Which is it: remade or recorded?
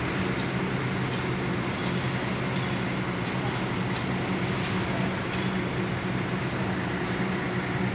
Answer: recorded